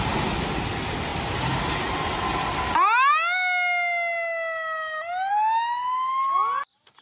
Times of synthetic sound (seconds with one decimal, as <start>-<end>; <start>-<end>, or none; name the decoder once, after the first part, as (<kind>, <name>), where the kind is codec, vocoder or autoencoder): none